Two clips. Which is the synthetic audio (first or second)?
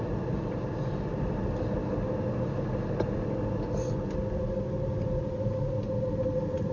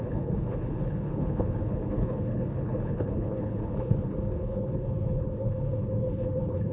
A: second